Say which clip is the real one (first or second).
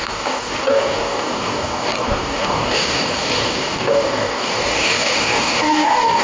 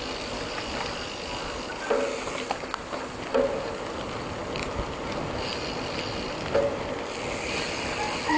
second